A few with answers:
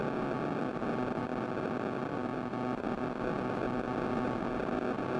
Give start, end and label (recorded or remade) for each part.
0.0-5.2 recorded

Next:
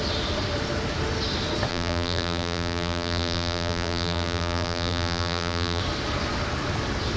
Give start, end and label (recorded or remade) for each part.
0.0-1.7 recorded; 1.7-5.8 remade; 5.8-7.2 recorded

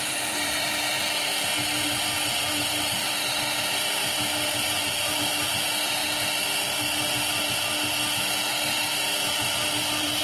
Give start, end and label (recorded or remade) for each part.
0.0-1.3 remade; 1.3-2.4 recorded; 2.4-4.0 remade; 4.0-4.8 recorded; 4.8-6.0 remade; 6.0-10.2 recorded

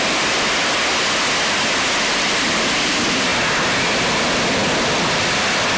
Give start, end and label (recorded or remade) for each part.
0.0-3.3 remade; 3.3-4.1 recorded; 4.1-4.6 remade; 4.6-5.2 recorded; 5.2-5.8 remade

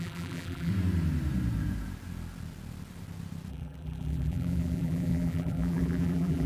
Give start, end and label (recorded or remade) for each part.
0.0-0.7 remade; 0.7-3.5 recorded; 3.5-6.5 remade

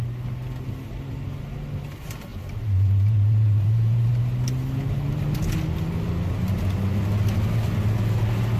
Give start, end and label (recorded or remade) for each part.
0.0-2.3 recorded; 2.3-4.1 remade; 4.1-8.6 recorded

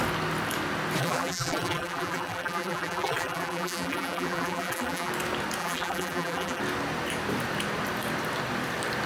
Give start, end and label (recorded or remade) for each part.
0.0-1.0 recorded; 1.0-5.1 remade; 5.1-5.6 recorded; 5.6-6.6 remade; 6.6-9.1 recorded